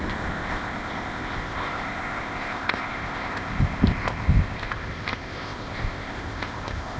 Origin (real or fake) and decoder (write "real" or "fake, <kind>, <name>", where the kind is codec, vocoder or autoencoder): fake, codec, ZipCodec